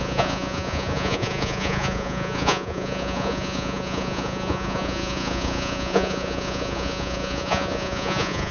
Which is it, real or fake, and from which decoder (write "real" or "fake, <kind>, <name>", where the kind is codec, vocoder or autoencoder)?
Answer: fake, vocoder, Vocos